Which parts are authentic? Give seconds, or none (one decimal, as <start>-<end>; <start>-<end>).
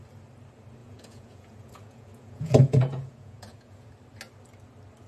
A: 0.0-0.8; 3.9-5.1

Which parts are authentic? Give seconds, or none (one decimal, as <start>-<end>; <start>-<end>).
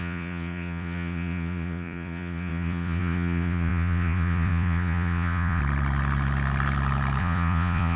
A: 5.6-7.2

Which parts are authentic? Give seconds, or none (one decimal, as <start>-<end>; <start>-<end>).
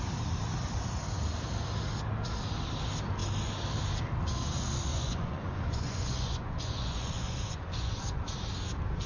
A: 0.0-4.9; 8.2-9.1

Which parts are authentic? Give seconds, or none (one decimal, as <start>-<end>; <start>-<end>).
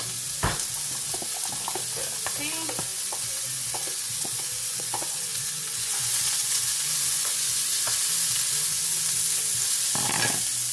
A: 0.0-2.9; 7.8-10.7